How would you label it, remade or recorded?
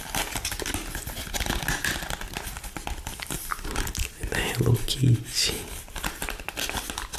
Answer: recorded